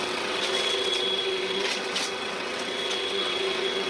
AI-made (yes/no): yes